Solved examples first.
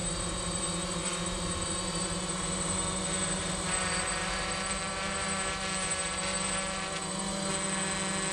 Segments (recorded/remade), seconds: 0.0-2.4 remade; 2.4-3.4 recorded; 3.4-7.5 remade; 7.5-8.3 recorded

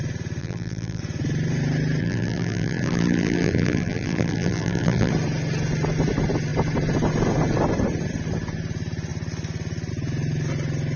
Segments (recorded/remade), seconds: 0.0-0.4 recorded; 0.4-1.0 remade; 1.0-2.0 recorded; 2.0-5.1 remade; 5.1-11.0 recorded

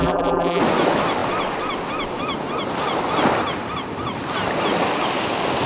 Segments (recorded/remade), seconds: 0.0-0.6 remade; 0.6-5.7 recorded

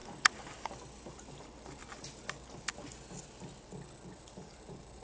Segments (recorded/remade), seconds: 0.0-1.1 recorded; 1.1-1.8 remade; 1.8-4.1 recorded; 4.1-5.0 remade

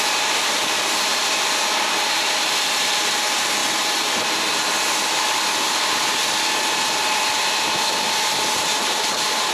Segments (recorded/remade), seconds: 0.0-3.6 remade; 3.6-5.1 recorded; 5.1-9.5 remade